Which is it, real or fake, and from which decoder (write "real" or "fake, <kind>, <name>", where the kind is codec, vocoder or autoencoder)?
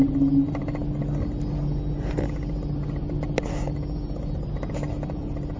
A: real